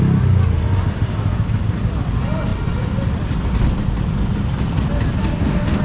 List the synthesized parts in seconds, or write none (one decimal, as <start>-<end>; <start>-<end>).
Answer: 5.2-5.8